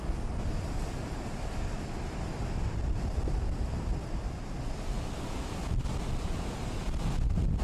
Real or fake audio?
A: real